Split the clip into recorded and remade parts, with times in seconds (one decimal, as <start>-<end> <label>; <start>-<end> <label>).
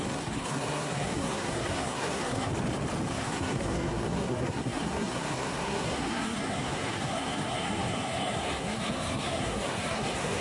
0.0-2.5 remade; 2.5-3.1 recorded; 3.1-10.4 remade